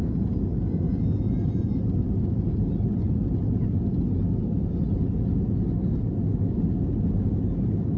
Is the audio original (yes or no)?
yes